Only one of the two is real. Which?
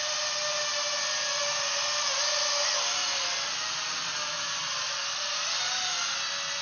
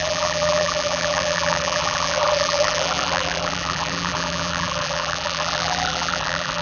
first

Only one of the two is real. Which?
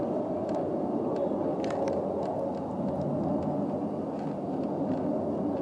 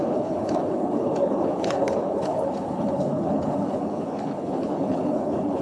first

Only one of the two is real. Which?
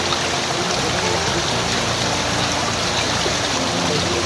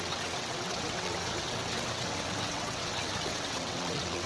first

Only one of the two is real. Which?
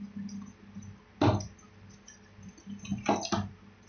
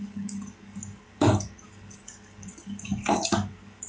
first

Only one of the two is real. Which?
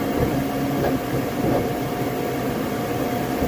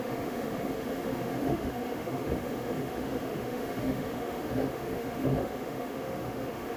first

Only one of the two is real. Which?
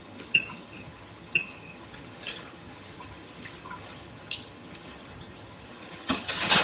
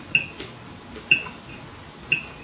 second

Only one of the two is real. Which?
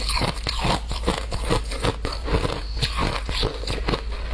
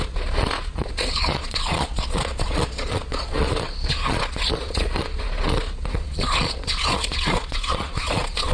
first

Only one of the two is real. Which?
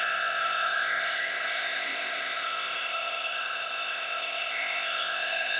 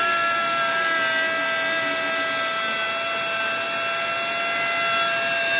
second